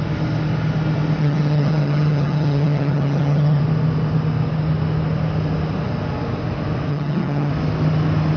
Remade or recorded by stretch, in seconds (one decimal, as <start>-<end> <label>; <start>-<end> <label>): 0.0-1.2 recorded; 1.2-3.6 remade; 3.6-6.9 recorded; 6.9-7.5 remade; 7.5-8.4 recorded